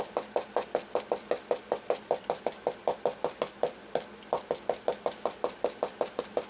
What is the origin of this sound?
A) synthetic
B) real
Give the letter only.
B